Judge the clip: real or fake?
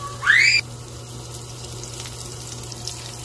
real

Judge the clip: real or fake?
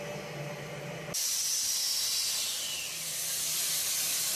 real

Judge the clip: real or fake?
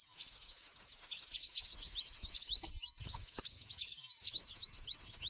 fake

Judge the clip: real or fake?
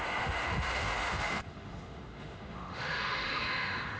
fake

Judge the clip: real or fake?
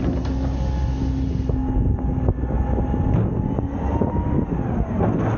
real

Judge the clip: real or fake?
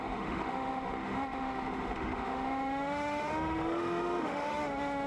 fake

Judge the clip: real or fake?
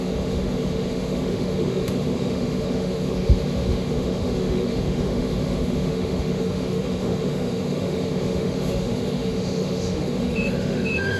fake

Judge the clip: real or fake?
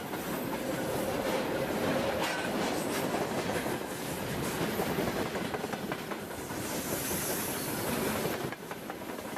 real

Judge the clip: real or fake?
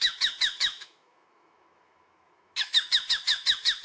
fake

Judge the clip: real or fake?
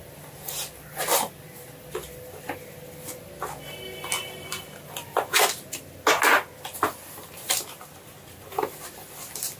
real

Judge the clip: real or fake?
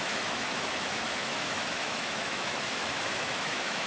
fake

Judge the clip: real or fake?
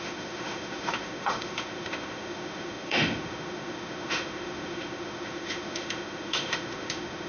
fake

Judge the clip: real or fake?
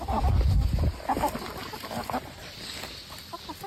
real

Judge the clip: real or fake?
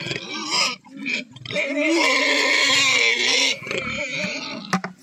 real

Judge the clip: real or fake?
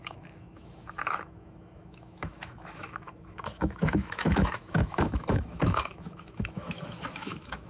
fake